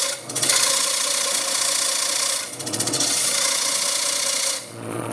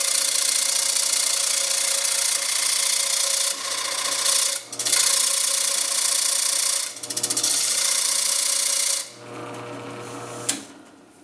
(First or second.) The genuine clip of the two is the second